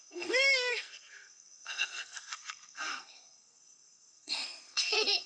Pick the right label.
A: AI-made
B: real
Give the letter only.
A